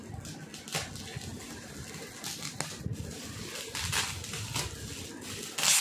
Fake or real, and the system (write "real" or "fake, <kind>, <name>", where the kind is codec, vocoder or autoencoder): real